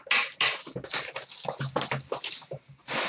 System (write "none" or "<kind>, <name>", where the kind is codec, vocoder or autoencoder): none